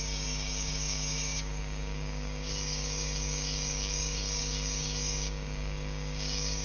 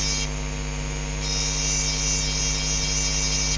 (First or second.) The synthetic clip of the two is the first